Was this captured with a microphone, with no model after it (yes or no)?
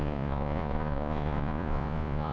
no